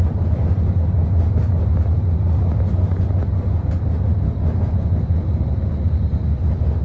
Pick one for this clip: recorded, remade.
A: recorded